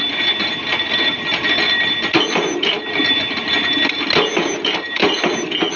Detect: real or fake real